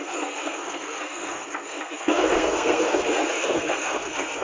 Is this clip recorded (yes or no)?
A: no